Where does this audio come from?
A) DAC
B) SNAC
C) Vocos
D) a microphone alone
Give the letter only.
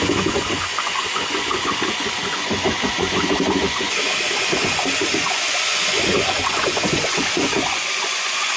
C